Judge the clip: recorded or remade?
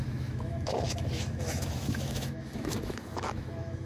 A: remade